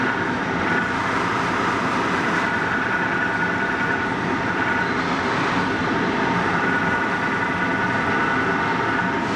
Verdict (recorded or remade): remade